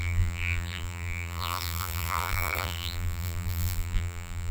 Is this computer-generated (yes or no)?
yes